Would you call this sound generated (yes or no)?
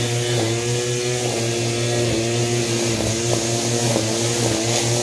no